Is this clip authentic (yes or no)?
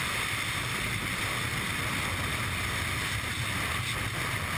yes